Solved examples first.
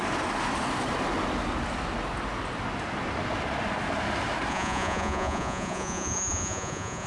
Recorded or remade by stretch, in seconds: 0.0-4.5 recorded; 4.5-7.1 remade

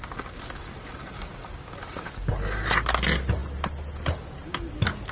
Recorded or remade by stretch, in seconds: 0.0-5.1 recorded

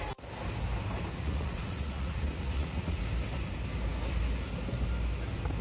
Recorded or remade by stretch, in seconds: 0.0-1.1 recorded; 1.1-3.0 remade; 3.0-5.6 recorded

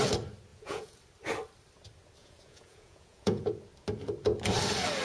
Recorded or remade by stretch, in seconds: 0.0-0.5 recorded; 0.5-1.0 remade; 1.0-2.2 recorded; 2.2-3.5 remade; 3.5-5.0 recorded

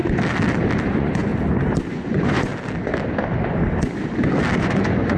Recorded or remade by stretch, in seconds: 0.0-0.9 recorded; 0.9-1.3 remade; 1.3-1.9 recorded; 1.9-2.5 remade; 2.5-4.6 recorded; 4.6-5.2 remade

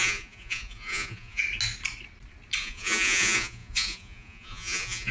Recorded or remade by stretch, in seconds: 0.0-1.4 remade; 1.4-2.6 recorded; 2.6-5.1 remade